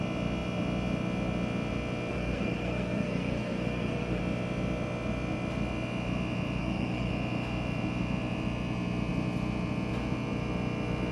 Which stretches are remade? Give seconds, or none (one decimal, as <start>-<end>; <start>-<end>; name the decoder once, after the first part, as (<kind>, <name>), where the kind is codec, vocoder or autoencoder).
2.1-4.2 (codec, SNAC); 6.6-7.1